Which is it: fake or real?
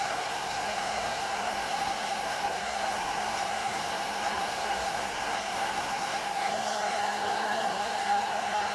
fake